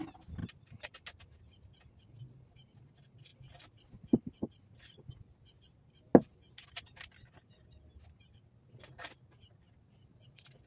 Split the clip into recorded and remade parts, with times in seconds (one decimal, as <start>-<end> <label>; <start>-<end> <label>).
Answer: 0.0-10.7 recorded